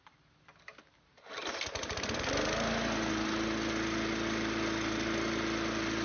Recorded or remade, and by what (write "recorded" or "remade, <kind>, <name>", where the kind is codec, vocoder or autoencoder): recorded